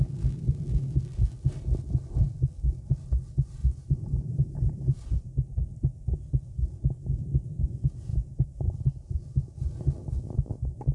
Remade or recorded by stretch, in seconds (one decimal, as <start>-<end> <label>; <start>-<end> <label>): 0.0-3.6 recorded; 3.6-5.5 remade; 5.5-8.1 recorded; 8.1-8.7 remade; 8.7-10.9 recorded